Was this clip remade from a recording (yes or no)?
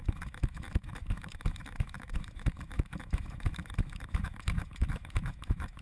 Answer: yes